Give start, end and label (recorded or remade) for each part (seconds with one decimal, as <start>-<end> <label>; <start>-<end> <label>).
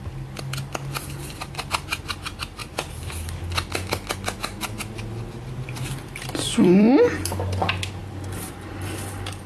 0.0-2.6 remade; 2.6-5.5 recorded; 5.5-8.0 remade; 8.0-8.7 recorded; 8.7-9.5 remade